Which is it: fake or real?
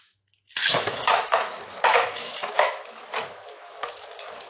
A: fake